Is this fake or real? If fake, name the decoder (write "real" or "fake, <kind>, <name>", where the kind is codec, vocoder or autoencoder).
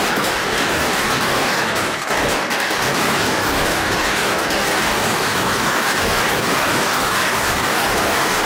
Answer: fake, codec, DAC